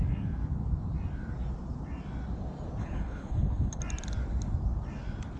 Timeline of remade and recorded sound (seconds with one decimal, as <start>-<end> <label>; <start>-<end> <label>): 0.0-2.8 recorded; 2.8-3.8 remade; 3.8-5.4 recorded